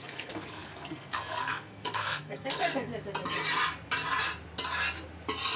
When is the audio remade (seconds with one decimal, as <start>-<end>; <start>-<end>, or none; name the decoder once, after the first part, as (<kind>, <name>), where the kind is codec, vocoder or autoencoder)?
0.0-2.9 (codec, SNAC)